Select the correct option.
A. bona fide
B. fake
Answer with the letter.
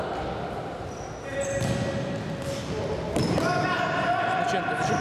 A